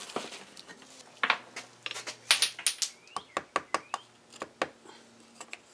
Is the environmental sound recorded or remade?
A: recorded